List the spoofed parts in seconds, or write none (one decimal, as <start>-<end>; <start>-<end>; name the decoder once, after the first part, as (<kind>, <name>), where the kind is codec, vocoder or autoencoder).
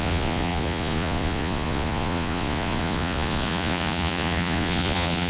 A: 0.0-5.3 (vocoder, Vocos)